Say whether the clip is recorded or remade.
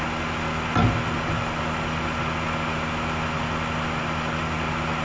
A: recorded